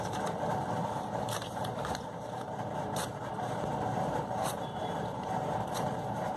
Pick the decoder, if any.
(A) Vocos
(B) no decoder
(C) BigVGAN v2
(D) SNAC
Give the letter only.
C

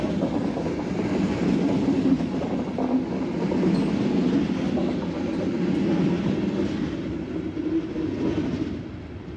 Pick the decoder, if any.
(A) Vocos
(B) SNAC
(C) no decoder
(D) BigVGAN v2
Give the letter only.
C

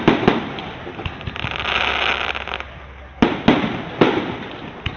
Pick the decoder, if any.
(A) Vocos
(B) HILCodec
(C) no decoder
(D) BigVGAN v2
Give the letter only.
C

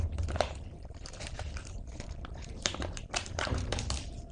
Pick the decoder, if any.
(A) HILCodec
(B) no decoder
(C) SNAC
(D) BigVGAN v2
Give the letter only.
D